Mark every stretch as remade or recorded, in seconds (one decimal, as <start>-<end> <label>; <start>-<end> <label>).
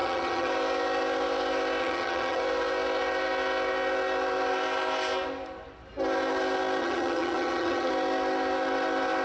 0.0-0.5 remade; 0.5-1.8 recorded; 1.8-2.4 remade; 2.4-6.8 recorded; 6.8-7.9 remade; 7.9-9.2 recorded